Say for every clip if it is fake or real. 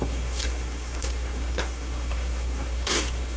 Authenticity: fake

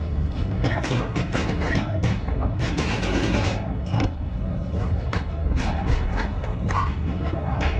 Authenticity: fake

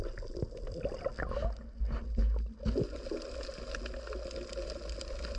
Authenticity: real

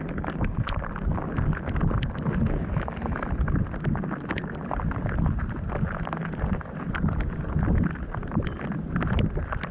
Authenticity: real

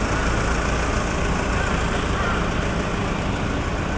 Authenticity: real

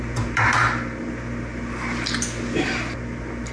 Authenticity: real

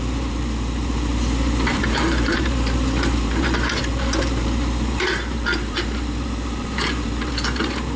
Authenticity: fake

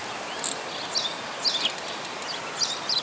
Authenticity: real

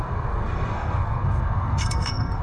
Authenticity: fake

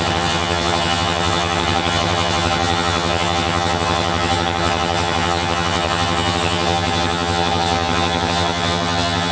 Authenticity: fake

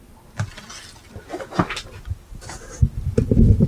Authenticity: real